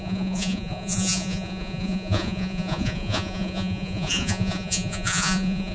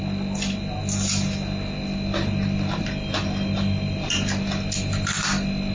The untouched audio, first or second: second